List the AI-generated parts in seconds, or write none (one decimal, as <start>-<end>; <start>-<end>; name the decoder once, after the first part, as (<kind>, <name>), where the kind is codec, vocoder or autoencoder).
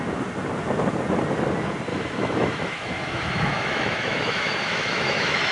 1.9-5.5 (autoencoder, DAC-VAE)